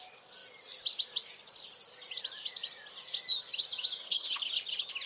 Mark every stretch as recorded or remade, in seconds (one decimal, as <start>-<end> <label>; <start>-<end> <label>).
0.0-4.0 recorded; 4.0-4.5 remade; 4.5-5.1 recorded